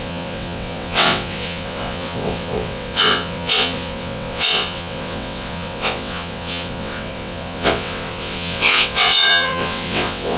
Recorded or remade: remade